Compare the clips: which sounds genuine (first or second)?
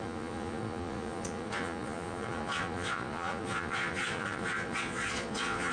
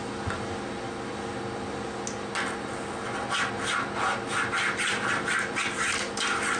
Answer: second